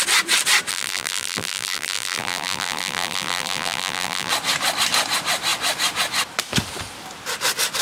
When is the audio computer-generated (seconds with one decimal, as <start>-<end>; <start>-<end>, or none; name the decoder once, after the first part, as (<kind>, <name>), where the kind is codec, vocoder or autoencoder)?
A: 0.7-4.3 (vocoder, BigVGAN v2)